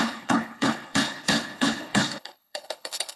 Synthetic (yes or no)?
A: yes